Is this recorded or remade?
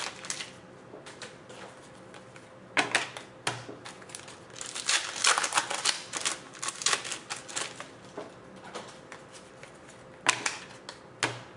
recorded